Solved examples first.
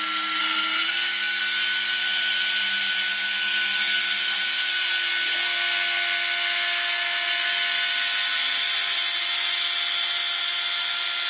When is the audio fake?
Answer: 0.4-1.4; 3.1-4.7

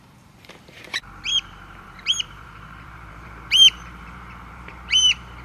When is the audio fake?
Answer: 0.0-5.4